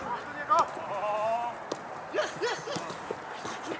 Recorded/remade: recorded